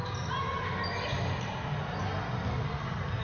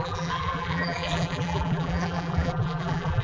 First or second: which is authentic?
first